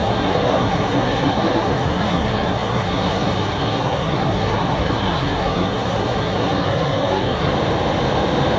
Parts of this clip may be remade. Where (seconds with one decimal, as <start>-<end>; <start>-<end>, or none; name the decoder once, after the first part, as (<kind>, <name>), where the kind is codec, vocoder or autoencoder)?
0.0-7.5 (codec, SNAC)